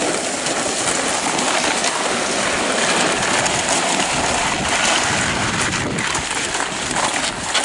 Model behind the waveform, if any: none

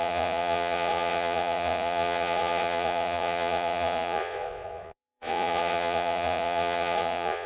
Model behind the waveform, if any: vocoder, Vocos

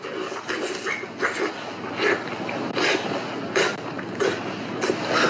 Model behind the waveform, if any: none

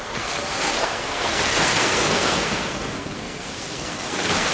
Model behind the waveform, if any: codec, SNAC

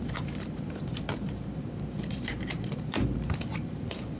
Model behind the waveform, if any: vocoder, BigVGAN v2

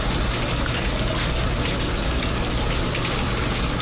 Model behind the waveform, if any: none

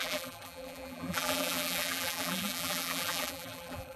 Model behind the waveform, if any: vocoder, BigVGAN v2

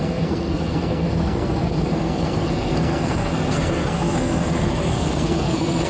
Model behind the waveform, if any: codec, SNAC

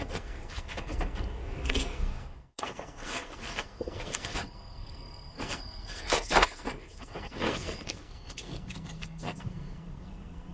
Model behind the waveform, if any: codec, SNAC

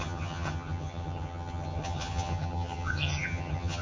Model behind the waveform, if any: vocoder, HiFi-GAN